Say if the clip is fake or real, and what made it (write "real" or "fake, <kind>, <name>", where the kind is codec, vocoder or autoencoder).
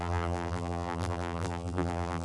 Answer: fake, vocoder, BigVGAN v2